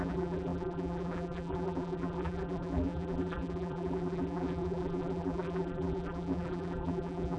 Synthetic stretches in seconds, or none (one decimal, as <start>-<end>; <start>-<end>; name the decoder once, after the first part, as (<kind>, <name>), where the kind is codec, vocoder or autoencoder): 0.0-7.4 (vocoder, BigVGAN v2)